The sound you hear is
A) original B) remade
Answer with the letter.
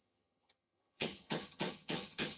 B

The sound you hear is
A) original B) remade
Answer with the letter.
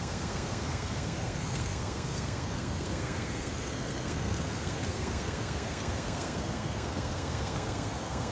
B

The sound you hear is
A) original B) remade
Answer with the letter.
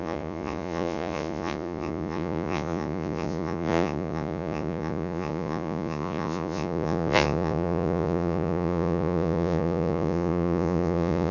B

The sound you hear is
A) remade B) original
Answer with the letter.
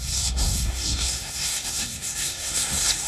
A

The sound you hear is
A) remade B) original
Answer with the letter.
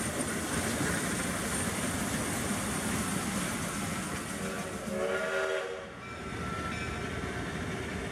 B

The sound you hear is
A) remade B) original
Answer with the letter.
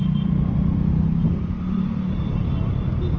B